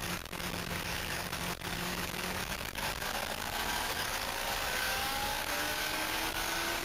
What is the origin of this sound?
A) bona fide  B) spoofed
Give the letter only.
B